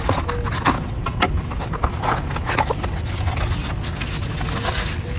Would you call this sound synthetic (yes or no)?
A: no